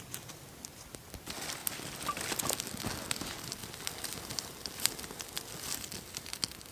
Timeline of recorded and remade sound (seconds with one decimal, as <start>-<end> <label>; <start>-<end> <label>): 0.0-6.7 recorded

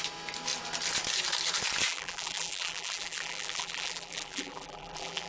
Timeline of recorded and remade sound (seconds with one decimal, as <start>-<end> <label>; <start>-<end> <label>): 0.0-1.9 recorded; 1.9-5.3 remade

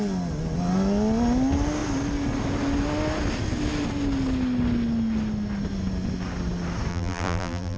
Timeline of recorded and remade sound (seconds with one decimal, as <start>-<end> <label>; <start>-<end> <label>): 0.0-6.9 recorded; 6.9-7.8 remade